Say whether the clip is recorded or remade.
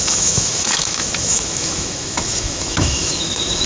remade